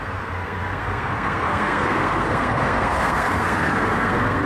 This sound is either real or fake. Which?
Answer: fake